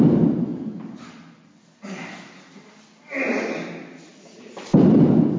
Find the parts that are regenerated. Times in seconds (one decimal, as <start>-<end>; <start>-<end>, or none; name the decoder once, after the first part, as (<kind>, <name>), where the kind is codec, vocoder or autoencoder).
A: none